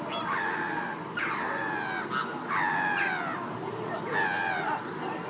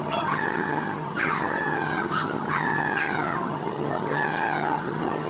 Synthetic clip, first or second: second